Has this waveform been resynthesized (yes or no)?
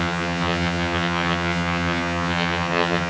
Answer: yes